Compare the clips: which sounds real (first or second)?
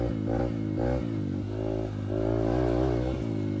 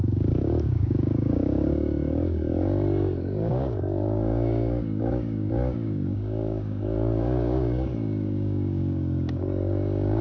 first